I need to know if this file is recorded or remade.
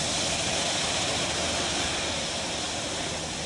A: recorded